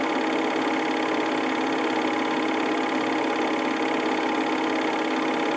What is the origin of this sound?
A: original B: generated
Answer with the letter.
A